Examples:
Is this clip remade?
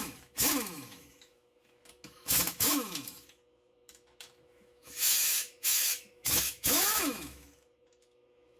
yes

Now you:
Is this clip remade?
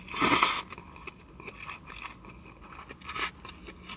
no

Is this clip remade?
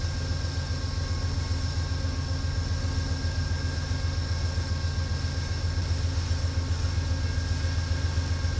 no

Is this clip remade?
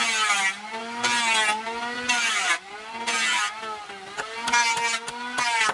no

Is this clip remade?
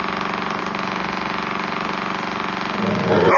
no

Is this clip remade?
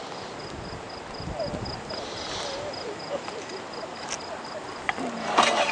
no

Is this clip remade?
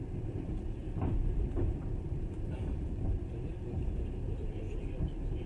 yes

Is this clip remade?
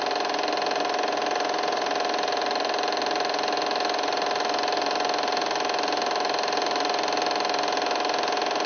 no